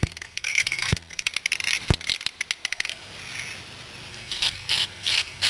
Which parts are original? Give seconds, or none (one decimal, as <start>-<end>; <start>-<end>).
1.3-2.7; 3.1-4.1